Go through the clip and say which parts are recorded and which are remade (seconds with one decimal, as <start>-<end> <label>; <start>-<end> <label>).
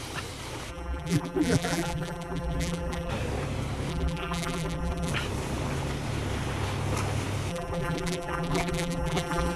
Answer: 0.0-0.7 recorded; 0.7-3.1 remade; 3.1-3.9 recorded; 3.9-5.1 remade; 5.1-7.5 recorded; 7.5-9.6 remade